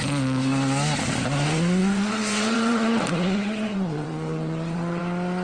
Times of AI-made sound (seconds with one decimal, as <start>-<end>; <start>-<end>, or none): 1.8-5.0